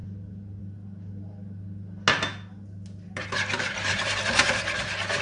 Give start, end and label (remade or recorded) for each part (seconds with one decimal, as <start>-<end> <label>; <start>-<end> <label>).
0.0-5.2 recorded